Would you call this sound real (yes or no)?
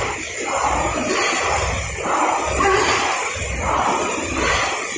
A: yes